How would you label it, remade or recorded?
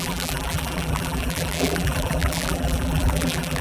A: remade